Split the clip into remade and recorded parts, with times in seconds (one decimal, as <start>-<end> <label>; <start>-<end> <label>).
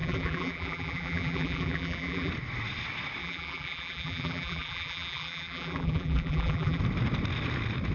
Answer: 0.0-2.3 remade; 2.3-3.2 recorded; 3.2-6.8 remade; 6.8-7.9 recorded